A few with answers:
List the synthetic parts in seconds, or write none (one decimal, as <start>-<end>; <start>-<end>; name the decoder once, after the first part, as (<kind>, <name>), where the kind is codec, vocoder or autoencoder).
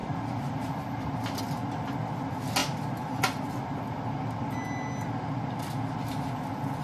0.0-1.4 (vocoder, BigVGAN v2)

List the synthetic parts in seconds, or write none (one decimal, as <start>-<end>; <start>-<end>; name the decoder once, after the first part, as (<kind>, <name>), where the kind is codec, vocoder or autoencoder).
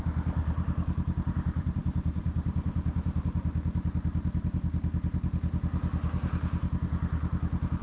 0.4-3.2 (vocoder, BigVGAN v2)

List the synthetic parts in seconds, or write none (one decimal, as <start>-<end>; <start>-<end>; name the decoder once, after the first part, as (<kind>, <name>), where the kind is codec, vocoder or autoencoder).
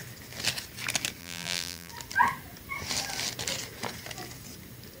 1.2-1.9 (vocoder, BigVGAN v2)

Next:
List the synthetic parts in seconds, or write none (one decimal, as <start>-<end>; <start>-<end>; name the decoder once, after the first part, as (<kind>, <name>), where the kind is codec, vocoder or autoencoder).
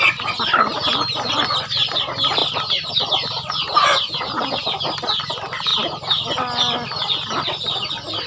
2.4-2.9 (vocoder, BigVGAN v2)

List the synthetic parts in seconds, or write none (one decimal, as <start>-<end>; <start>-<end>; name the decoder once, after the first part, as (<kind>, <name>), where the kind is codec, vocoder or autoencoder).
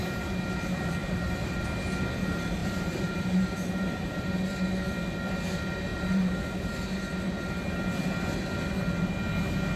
1.0-1.5 (vocoder, BigVGAN v2); 2.6-4.5; 5.9-6.7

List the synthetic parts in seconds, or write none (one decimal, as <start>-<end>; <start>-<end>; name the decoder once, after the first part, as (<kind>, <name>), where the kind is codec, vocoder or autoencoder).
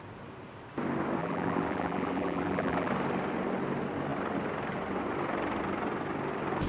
1.2-2.9 (vocoder, BigVGAN v2)